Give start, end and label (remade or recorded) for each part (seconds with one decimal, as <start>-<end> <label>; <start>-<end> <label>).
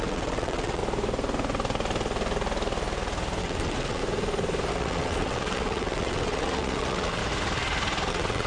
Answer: 0.0-0.8 remade; 0.8-3.4 recorded; 3.4-4.0 remade; 4.0-4.7 recorded; 4.7-7.2 remade; 7.2-8.1 recorded; 8.1-8.5 remade